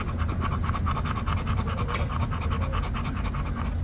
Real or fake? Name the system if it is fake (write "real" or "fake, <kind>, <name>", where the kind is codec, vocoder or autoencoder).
real